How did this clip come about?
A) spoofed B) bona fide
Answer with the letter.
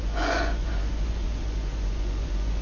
A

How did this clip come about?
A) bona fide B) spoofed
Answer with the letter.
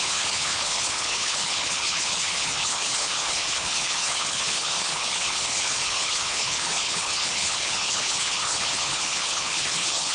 B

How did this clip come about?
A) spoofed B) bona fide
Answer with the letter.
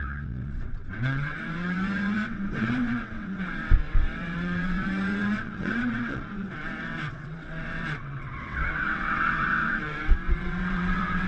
A